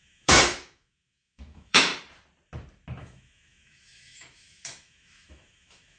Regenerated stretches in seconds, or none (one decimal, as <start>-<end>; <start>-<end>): 0.0-1.9; 3.0-6.0